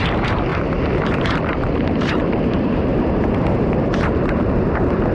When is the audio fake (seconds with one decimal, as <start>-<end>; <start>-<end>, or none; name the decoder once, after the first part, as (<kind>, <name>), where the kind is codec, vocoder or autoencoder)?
0.0-2.9 (vocoder, BigVGAN v2); 3.4-5.1